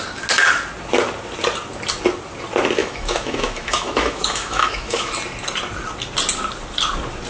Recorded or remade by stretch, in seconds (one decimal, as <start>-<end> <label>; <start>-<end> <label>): 0.0-2.8 recorded; 2.8-5.1 remade; 5.1-7.3 recorded